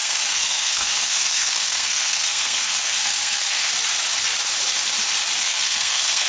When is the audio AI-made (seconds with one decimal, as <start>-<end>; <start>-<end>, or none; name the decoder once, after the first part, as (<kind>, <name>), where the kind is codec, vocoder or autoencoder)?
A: 0.0-3.7 (codec, SNAC); 5.4-6.3

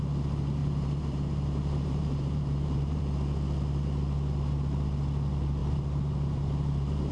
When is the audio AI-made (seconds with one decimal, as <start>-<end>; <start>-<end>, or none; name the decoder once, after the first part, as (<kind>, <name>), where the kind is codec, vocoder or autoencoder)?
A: 0.6-3.0 (vocoder, BigVGAN v2); 5.6-7.1

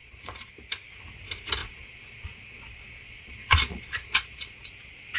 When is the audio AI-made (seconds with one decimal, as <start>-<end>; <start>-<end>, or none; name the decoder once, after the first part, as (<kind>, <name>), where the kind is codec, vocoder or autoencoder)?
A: 0.0-0.5 (vocoder, Vocos); 1.6-4.7